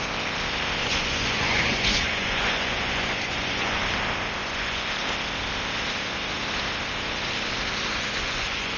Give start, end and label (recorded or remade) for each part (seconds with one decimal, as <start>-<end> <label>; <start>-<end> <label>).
0.0-0.8 recorded; 0.8-3.8 remade; 3.8-4.4 recorded; 4.4-4.9 remade; 4.9-7.9 recorded; 7.9-8.8 remade